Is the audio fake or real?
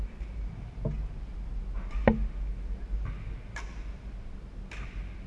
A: real